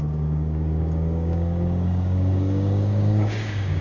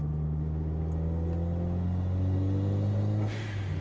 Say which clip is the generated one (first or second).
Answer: first